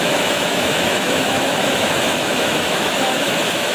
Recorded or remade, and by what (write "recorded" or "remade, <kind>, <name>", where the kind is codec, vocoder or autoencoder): remade, autoencoder, DAC-VAE